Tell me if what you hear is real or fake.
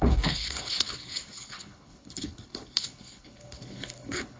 fake